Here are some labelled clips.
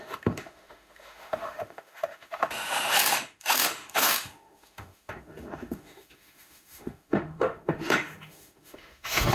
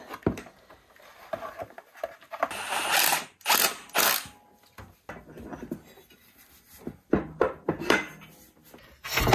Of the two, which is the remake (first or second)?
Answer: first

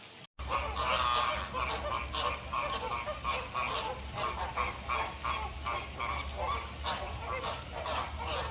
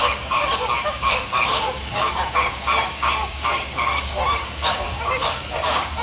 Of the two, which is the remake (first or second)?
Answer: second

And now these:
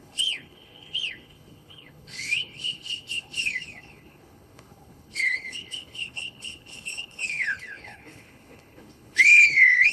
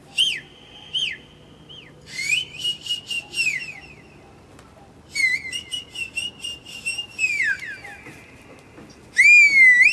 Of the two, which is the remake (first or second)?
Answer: first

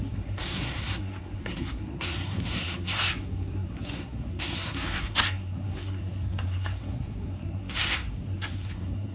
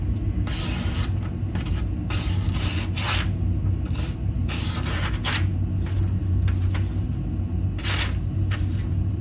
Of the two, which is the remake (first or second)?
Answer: first